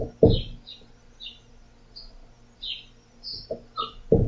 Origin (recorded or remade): recorded